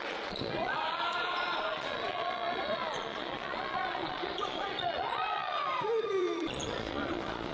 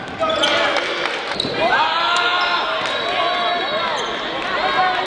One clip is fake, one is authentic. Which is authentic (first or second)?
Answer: second